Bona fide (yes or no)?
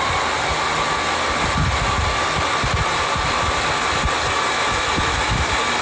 yes